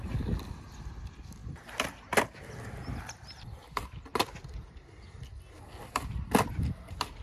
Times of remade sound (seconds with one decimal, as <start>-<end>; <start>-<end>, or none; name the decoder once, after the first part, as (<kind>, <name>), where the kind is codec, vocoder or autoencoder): none